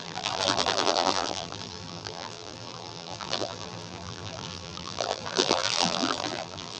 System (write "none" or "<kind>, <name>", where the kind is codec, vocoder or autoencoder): vocoder, BigVGAN v2